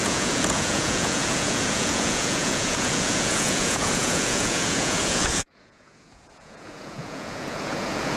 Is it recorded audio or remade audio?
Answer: remade